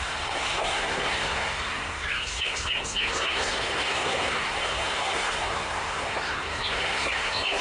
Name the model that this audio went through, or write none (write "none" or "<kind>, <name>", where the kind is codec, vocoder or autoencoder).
codec, SNAC